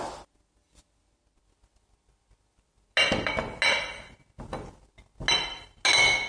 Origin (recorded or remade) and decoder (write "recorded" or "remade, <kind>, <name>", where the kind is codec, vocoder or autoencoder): recorded